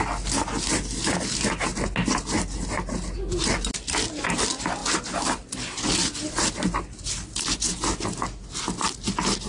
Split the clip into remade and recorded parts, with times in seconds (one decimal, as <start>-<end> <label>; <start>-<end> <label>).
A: 0.0-9.5 recorded